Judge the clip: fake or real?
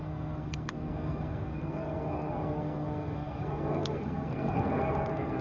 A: fake